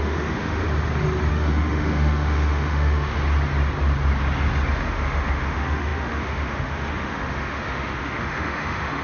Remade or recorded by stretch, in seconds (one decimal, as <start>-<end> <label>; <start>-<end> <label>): 0.0-0.6 remade; 0.6-1.3 recorded; 1.3-3.1 remade; 3.1-4.7 recorded; 4.7-9.0 remade